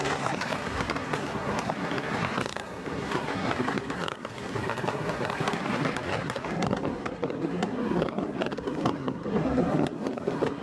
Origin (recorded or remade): remade